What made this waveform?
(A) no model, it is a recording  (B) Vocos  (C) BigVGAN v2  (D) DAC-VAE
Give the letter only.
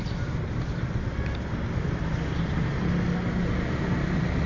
A